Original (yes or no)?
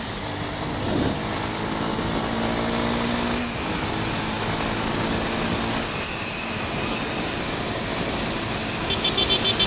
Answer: yes